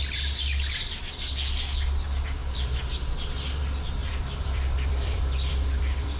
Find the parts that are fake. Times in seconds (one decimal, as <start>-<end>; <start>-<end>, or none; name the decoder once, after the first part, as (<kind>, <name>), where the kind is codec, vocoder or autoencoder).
4.0-6.2 (vocoder, BigVGAN v2)